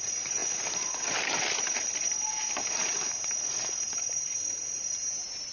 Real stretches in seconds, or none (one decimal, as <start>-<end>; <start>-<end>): none